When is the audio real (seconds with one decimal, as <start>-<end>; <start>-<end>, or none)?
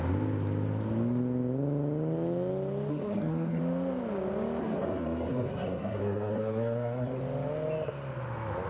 0.0-2.9; 3.6-4.6; 7.2-8.7